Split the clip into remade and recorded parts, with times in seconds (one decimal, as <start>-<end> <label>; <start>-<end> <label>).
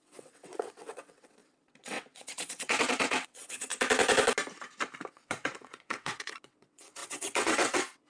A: 0.0-3.7 remade; 3.7-5.1 recorded; 5.1-8.1 remade